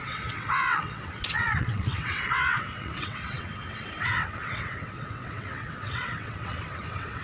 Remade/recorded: remade